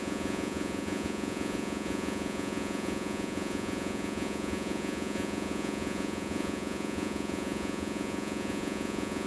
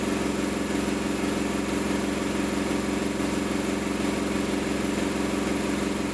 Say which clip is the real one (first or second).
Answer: second